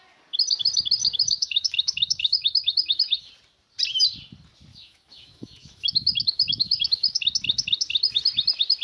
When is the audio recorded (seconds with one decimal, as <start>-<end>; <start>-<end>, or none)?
0.0-1.0; 3.3-4.7; 7.2-8.8